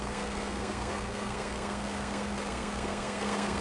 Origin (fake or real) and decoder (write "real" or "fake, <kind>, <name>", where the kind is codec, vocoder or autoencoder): fake, codec, SNAC